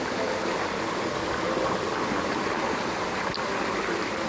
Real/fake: real